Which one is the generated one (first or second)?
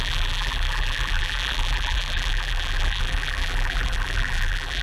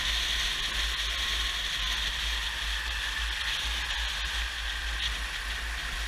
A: first